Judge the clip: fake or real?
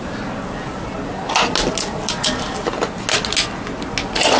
real